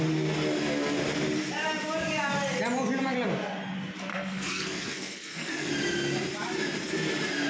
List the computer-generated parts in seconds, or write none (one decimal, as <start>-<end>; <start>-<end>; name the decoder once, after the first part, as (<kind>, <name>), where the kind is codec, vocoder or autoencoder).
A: 4.1-5.7 (codec, SNAC)